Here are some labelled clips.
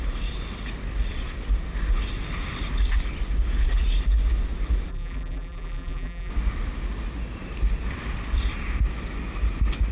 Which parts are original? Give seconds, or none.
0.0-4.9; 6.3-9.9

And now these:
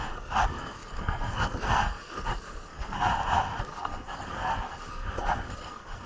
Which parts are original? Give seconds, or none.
3.1-3.6

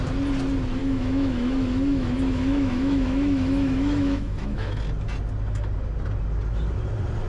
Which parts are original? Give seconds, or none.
0.0-0.8; 4.8-7.3

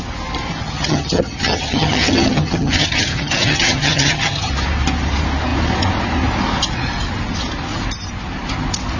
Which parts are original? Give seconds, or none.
0.0-0.6; 4.5-9.0

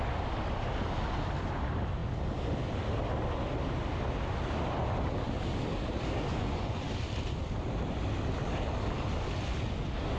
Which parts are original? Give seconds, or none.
0.0-6.3; 6.9-10.2

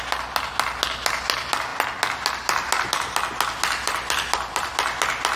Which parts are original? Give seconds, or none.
0.0-3.8; 4.7-5.4

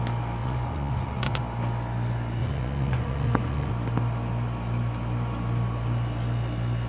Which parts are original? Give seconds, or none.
0.0-0.4; 1.4-2.4; 3.7-6.9